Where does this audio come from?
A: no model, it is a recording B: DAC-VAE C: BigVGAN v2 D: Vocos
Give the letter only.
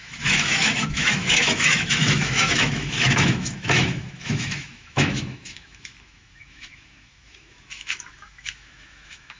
B